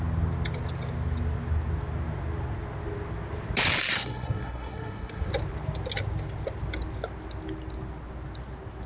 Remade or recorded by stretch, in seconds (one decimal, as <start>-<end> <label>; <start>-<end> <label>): 0.0-3.9 recorded; 3.9-5.3 remade; 5.3-8.9 recorded